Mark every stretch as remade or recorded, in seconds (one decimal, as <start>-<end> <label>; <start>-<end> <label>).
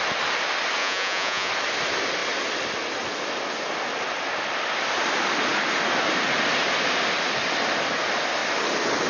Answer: 0.0-0.8 recorded; 0.8-1.5 remade; 1.5-9.1 recorded